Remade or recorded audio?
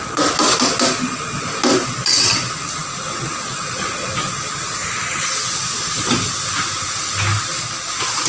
recorded